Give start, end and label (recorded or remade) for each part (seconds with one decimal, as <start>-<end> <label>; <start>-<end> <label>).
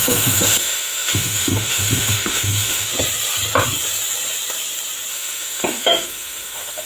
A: 0.0-2.9 remade; 2.9-5.1 recorded; 5.1-6.9 remade